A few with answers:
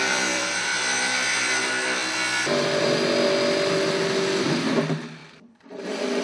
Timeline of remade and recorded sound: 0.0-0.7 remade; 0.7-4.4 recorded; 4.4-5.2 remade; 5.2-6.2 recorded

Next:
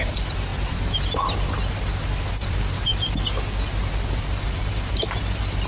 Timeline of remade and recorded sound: 0.0-0.5 remade; 0.5-2.4 recorded; 2.4-2.9 remade; 2.9-4.1 recorded; 4.1-5.7 remade

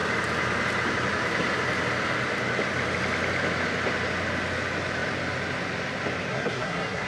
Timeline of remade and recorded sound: 0.0-6.3 recorded; 6.3-7.1 remade

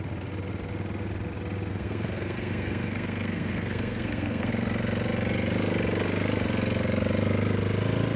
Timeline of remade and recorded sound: 0.0-1.7 recorded; 1.7-4.5 remade; 4.5-8.2 recorded